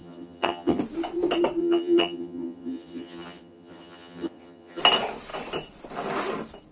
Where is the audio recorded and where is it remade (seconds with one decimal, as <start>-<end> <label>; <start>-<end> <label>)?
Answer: 0.0-0.8 remade; 0.8-1.6 recorded; 1.6-4.8 remade; 4.8-6.7 recorded